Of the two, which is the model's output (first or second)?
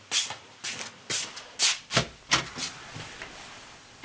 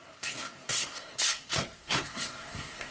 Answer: second